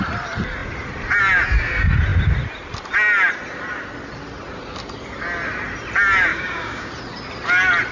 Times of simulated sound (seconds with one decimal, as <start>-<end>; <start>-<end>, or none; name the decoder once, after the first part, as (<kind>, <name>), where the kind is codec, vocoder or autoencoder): 6.3-6.9 (codec, DAC)